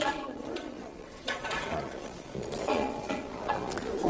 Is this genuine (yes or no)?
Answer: no